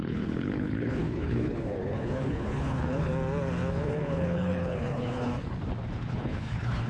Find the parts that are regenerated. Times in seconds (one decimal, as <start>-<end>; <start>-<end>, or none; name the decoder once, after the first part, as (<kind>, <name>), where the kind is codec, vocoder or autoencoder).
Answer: 0.0-3.1 (codec, HILCodec); 3.7-5.3; 6.1-6.9